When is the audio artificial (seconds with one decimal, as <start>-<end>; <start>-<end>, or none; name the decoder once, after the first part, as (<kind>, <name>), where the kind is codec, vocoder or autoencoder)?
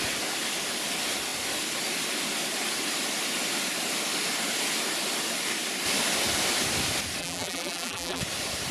7.2-8.2 (vocoder, BigVGAN v2)